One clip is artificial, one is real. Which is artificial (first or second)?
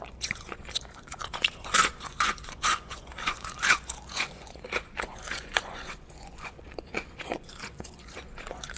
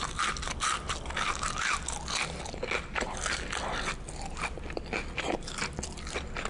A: first